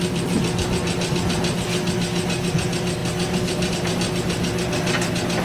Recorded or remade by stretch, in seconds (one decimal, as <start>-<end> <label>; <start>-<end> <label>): 0.0-5.4 recorded